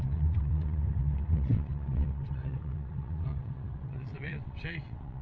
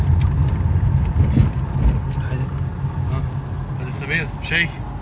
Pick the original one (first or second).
second